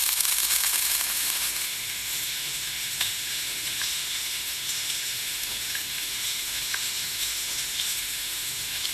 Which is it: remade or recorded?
remade